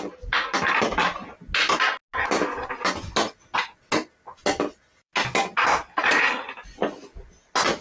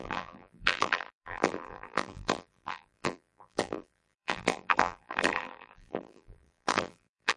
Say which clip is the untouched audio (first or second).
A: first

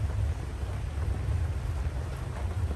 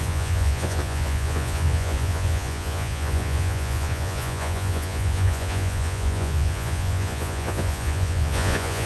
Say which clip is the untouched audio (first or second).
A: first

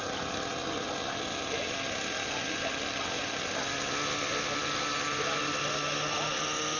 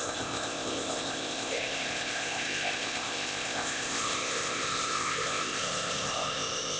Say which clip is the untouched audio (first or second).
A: first